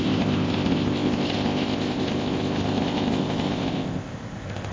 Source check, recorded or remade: remade